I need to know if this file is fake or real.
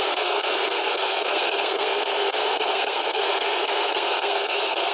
fake